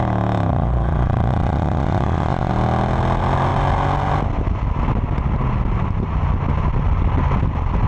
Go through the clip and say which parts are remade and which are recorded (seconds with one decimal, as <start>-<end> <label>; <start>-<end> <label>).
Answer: 0.0-0.5 recorded; 0.5-2.5 remade; 2.5-7.9 recorded